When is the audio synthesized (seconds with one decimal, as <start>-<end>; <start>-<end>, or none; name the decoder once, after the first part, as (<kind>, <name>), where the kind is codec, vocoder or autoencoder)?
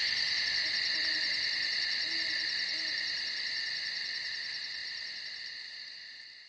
none